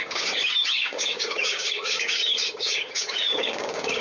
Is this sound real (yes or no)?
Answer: no